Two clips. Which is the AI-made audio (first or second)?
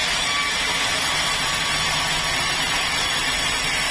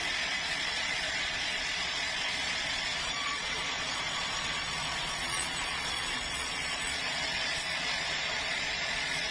second